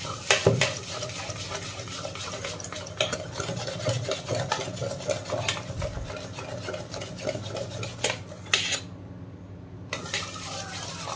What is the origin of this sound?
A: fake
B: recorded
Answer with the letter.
B